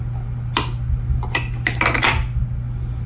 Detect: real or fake real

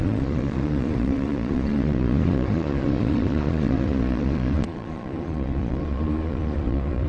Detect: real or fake fake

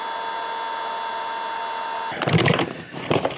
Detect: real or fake real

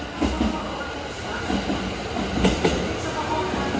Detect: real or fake real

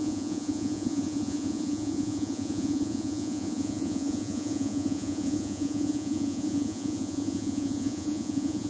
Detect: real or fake fake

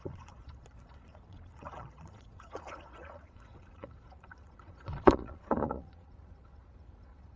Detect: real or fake fake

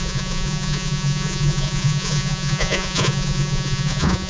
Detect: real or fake fake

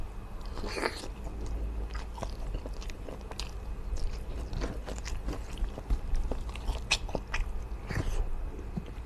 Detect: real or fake real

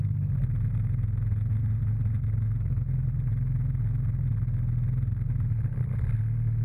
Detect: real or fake real